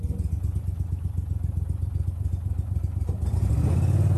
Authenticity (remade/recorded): recorded